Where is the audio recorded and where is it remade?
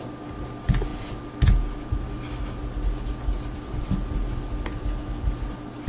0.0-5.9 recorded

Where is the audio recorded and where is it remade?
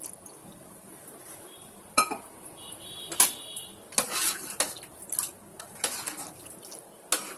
0.0-7.4 remade